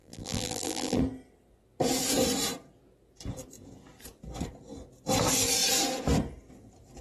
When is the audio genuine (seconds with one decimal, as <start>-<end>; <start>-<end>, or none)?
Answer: 1.0-7.0